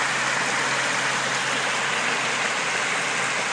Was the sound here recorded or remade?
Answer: recorded